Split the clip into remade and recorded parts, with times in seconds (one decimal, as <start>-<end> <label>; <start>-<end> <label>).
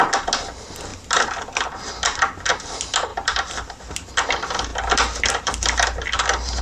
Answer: 0.0-0.9 recorded; 0.9-1.4 remade; 1.4-3.1 recorded; 3.1-3.7 remade; 3.7-4.7 recorded; 4.7-6.6 remade